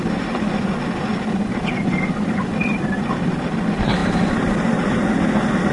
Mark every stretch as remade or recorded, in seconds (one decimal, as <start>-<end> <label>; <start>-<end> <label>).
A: 0.0-5.7 recorded